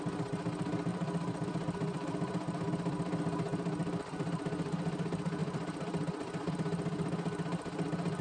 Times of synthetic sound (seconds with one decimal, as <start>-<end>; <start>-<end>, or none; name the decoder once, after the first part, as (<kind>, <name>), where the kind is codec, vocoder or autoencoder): 0.9-2.7 (vocoder, BigVGAN v2); 3.8-4.3; 5.4-6.5